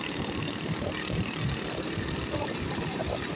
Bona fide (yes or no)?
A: no